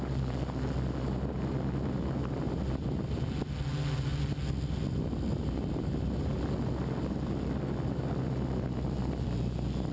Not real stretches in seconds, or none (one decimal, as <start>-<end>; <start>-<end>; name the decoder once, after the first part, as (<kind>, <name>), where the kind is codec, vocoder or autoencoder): none